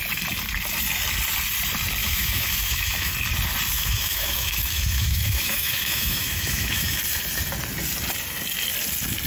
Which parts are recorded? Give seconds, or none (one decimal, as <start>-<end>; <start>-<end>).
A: 0.0-2.0; 3.1-3.7; 7.0-9.3